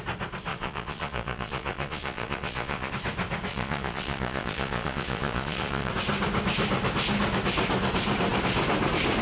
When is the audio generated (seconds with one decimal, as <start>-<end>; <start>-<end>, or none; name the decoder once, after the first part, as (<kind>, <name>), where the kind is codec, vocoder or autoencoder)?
0.5-2.9 (vocoder, Vocos); 3.5-5.9